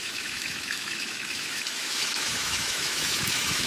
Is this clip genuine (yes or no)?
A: no